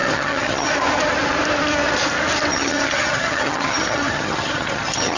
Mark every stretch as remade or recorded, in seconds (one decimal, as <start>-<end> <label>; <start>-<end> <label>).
0.0-0.7 remade; 0.7-2.5 recorded; 2.5-5.2 remade